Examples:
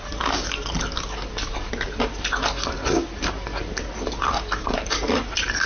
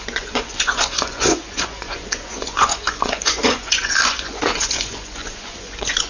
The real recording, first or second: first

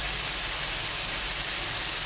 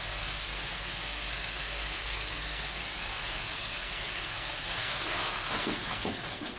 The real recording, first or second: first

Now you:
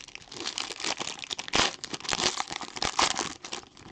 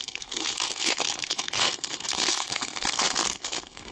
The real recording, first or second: first